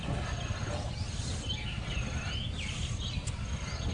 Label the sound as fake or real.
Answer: real